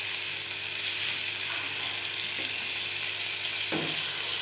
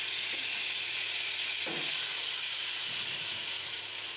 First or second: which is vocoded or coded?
second